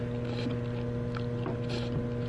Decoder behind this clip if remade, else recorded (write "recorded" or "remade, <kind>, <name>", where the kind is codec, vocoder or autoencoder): recorded